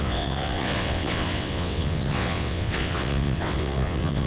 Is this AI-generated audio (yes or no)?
yes